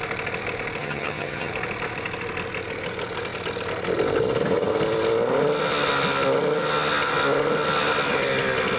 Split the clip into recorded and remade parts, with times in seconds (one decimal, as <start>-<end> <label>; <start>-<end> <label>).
0.0-0.8 recorded; 0.8-1.5 remade; 1.5-8.8 recorded